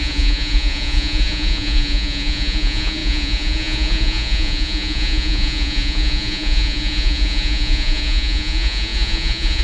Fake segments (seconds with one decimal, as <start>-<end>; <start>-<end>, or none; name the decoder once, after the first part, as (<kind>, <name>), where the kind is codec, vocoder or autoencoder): 0.0-9.6 (vocoder, Vocos)